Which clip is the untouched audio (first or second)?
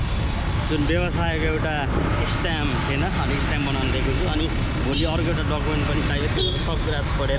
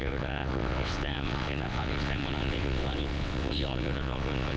first